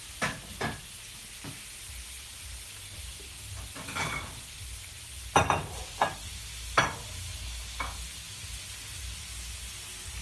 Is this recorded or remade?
recorded